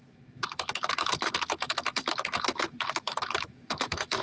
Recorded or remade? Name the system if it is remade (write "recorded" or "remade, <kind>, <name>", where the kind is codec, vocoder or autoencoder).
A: remade, autoencoder, DAC-VAE